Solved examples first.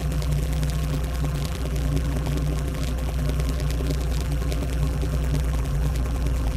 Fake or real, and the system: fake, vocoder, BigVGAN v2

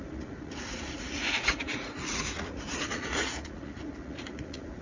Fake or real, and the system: fake, vocoder, Vocos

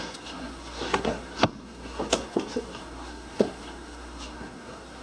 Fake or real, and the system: fake, codec, SNAC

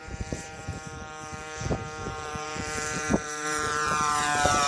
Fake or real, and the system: fake, vocoder, BigVGAN v2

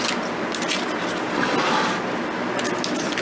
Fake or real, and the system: real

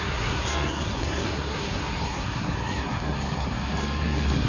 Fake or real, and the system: fake, codec, SNAC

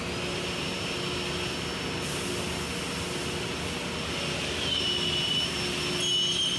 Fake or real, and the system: real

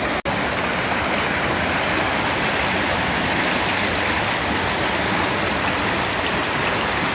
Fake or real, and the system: real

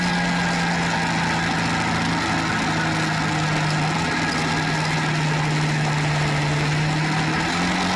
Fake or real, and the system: real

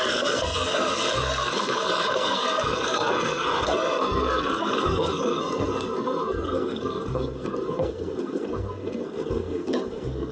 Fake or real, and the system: fake, codec, SNAC